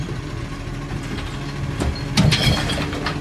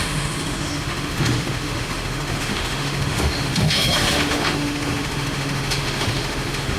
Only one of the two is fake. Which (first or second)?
second